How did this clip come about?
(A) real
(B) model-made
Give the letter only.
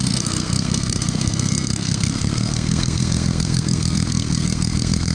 B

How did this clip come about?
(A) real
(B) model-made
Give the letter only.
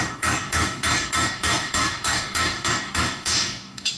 B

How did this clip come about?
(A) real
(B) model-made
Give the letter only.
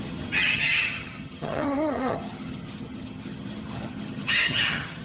B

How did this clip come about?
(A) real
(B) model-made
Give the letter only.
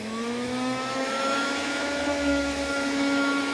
B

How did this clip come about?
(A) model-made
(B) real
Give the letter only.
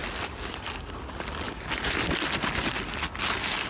B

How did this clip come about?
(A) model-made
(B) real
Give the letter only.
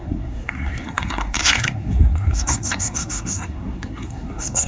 A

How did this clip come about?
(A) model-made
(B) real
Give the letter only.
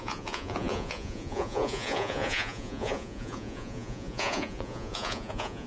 A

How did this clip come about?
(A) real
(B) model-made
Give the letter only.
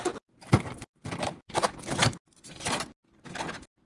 A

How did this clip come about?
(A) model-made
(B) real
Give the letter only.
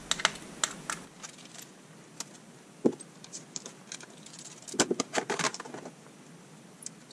B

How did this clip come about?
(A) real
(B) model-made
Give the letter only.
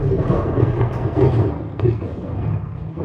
B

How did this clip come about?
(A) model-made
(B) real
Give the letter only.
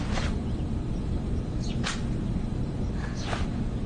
B